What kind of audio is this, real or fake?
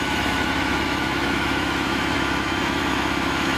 fake